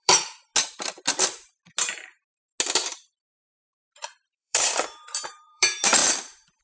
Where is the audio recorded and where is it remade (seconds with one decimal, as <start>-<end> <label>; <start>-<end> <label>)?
0.0-0.5 remade; 0.5-1.2 recorded; 1.2-1.6 remade; 1.6-3.4 recorded; 3.4-6.0 remade; 6.0-6.6 recorded